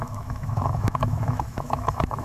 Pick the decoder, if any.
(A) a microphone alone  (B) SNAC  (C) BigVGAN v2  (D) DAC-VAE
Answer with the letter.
D